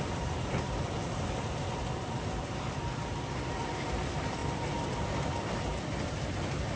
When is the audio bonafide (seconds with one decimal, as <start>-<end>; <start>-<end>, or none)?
4.4-5.4